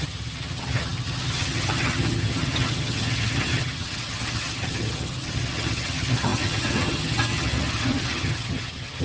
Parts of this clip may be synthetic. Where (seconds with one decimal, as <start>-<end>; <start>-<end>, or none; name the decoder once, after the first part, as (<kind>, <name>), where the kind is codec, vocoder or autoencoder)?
0.0-9.0 (vocoder, HiFi-GAN)